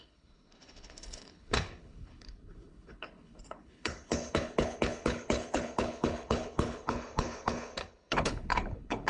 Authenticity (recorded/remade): remade